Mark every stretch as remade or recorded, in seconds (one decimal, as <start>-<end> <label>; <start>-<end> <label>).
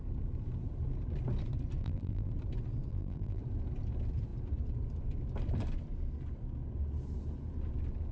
0.0-1.8 recorded; 1.8-2.3 remade; 2.3-2.9 recorded; 2.9-3.4 remade; 3.4-8.1 recorded